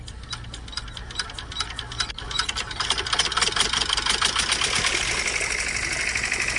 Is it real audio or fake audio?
real